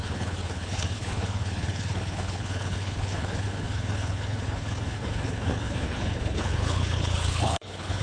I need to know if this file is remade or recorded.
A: remade